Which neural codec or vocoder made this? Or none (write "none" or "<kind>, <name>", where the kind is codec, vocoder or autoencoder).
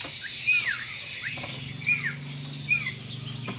none